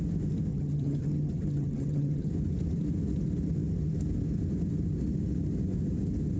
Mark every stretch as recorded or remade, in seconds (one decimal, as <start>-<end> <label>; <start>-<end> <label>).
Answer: 0.0-0.5 recorded; 0.5-2.3 remade; 2.3-6.4 recorded